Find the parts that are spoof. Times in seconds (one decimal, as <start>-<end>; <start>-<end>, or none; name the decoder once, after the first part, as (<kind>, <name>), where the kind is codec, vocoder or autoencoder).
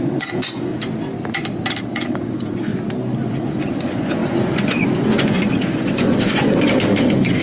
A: 0.0-0.7 (vocoder, Vocos); 1.9-2.7; 3.3-7.4